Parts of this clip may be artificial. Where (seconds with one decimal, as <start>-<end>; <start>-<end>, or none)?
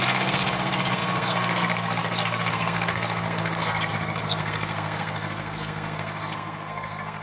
0.0-7.2